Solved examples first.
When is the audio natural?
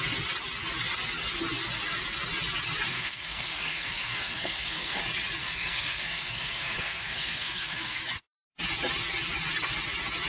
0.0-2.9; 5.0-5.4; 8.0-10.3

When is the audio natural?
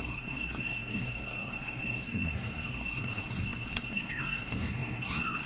none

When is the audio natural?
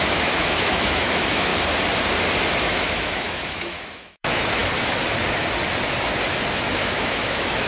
1.5-2.6; 4.6-6.5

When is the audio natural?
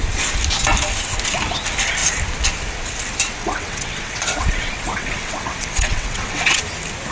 0.0-3.4; 6.6-7.1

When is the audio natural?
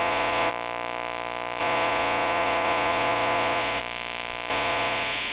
0.5-1.6; 3.8-4.5